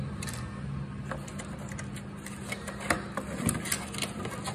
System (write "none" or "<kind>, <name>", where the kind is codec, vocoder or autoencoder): none